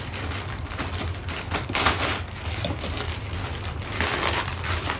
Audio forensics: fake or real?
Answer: real